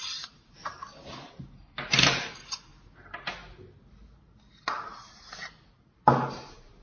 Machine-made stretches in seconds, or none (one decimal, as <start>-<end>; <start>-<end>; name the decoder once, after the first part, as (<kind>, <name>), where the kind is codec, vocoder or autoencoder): 0.0-2.7 (vocoder, BigVGAN v2); 4.5-4.9; 5.6-6.8